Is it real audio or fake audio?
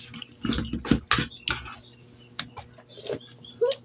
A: real